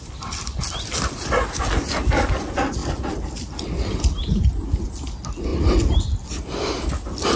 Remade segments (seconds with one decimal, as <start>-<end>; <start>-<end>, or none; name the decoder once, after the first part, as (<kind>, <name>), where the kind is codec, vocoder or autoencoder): 2.8-3.6 (vocoder, BigVGAN v2)